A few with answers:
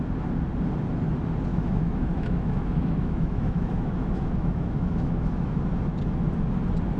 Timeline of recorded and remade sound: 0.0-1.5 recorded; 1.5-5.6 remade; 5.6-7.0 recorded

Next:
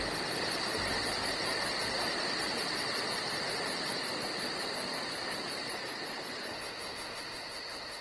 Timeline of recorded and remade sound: 0.0-6.5 recorded; 6.5-8.0 remade